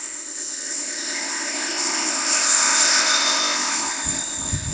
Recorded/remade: remade